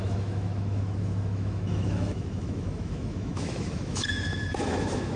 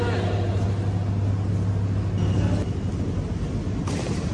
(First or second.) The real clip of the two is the second